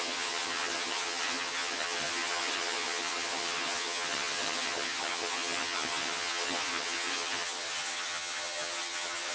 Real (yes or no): no